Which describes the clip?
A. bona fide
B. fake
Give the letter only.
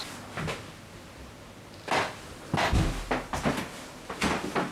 A